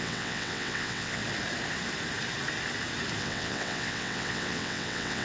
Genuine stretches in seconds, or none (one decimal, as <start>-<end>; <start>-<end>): 1.2-3.2